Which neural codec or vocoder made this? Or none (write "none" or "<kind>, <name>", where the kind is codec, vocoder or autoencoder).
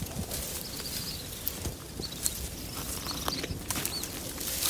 none